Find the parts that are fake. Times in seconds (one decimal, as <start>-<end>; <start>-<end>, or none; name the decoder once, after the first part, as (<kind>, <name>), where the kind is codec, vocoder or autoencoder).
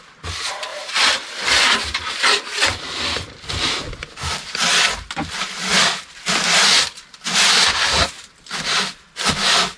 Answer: 0.7-1.4 (vocoder, BigVGAN v2)